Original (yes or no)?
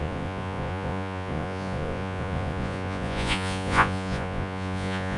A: no